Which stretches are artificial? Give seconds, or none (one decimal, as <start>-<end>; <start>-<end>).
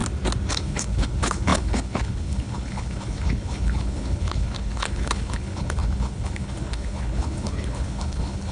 0.5-8.5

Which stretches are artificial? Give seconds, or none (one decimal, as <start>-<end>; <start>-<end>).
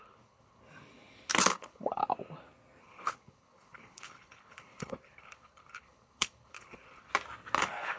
0.0-0.6; 1.5-2.0; 2.8-7.1; 7.6-8.0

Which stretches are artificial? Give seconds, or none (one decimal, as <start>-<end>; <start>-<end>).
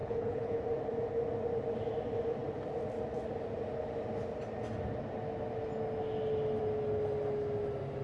0.0-0.6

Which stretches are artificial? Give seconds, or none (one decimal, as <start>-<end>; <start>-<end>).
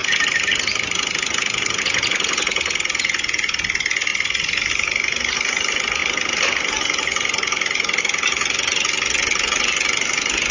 none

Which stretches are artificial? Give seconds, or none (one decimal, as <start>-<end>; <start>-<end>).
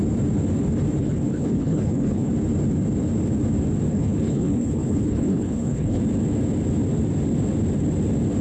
1.0-2.3; 3.9-6.0